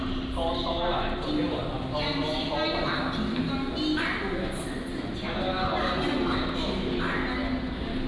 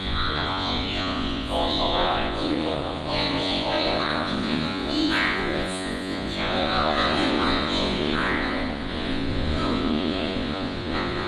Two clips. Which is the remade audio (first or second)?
second